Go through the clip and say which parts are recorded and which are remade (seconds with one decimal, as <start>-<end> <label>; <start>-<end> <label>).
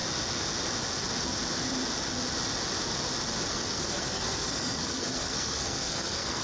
0.0-3.5 recorded; 3.5-6.4 remade